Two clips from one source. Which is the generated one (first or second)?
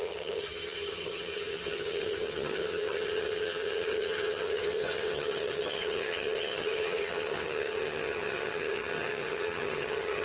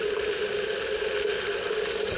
first